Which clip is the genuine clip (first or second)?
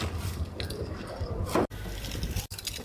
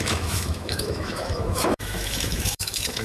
first